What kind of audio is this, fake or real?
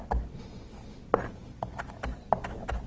real